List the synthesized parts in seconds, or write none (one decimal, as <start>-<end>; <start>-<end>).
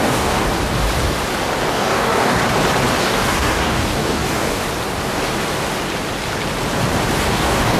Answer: 0.0-0.4; 1.7-2.4; 3.0-4.6; 7.3-7.8